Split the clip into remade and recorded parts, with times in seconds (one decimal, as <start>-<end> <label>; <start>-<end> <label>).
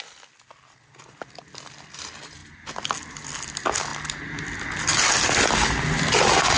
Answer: 0.0-6.6 recorded